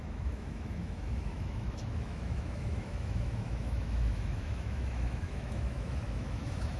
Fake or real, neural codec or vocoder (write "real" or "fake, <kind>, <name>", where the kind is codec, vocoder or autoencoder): fake, autoencoder, DAC-VAE